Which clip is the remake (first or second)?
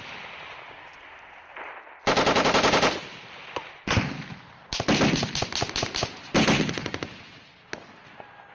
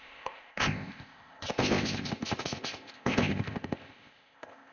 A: second